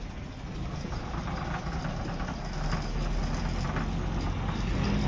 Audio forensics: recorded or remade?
recorded